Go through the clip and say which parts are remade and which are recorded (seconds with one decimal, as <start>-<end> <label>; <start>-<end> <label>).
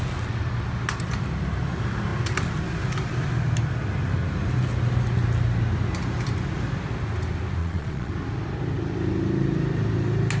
0.0-7.6 recorded; 7.6-8.1 remade; 8.1-10.4 recorded